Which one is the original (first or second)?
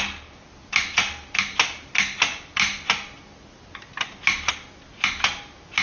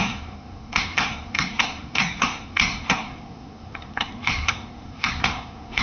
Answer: first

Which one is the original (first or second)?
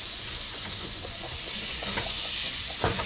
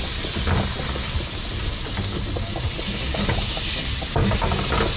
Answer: second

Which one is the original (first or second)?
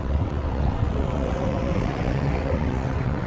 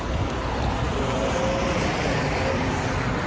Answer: second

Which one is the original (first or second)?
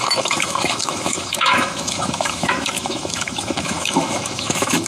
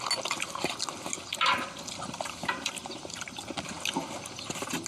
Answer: second